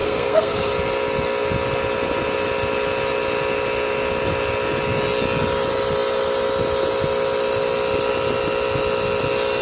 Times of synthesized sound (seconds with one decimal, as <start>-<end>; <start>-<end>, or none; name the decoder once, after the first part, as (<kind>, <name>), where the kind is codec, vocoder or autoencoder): 0.0-0.7 (codec, SNAC)